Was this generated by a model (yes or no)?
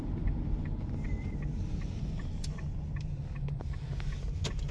no